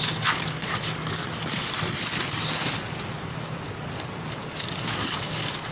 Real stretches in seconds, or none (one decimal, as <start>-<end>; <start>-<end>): 1.2-4.4